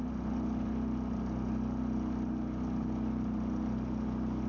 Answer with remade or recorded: recorded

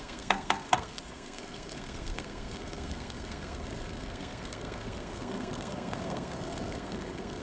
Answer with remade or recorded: remade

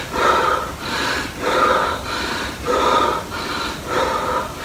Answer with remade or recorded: remade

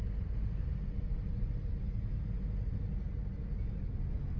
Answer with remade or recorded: recorded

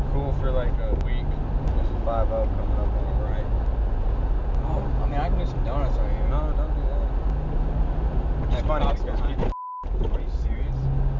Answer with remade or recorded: recorded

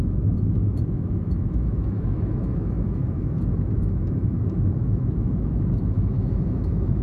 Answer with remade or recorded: remade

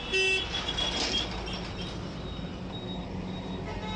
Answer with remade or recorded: recorded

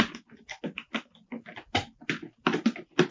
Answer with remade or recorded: recorded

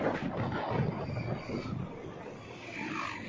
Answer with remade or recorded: recorded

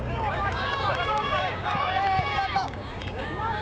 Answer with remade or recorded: remade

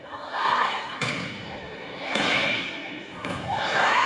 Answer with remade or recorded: remade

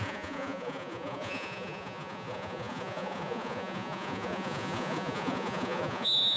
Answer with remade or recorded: remade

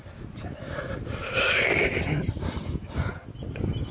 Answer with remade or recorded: recorded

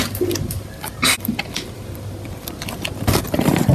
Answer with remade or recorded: recorded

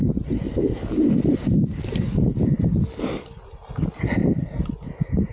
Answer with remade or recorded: recorded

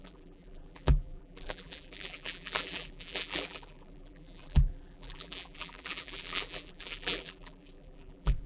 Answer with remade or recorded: remade